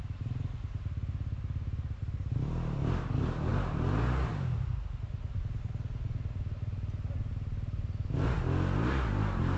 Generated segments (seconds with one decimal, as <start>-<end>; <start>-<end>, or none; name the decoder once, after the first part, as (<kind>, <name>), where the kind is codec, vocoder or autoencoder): none